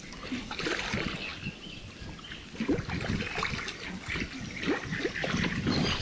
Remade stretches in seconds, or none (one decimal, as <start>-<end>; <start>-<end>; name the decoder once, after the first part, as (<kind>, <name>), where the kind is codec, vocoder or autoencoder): none